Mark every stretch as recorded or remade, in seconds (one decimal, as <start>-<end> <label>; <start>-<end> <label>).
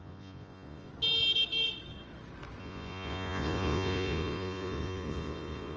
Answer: 0.0-0.9 remade; 0.9-2.6 recorded; 2.6-5.8 remade